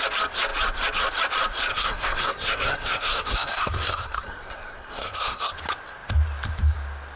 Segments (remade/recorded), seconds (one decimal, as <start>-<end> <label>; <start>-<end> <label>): 0.0-1.7 recorded; 1.7-5.5 remade; 5.5-7.2 recorded